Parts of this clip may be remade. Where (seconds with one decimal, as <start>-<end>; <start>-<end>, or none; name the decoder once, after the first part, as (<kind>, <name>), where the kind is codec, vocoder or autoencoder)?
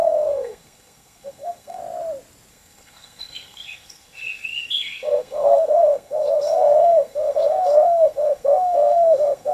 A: 0.0-1.8 (codec, SNAC); 2.5-9.5